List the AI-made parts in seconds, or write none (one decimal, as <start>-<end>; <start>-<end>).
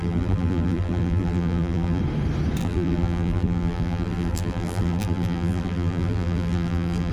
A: 0.0-2.0; 2.6-7.1